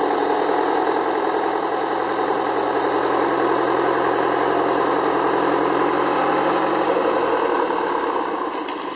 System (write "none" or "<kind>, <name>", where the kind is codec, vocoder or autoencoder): none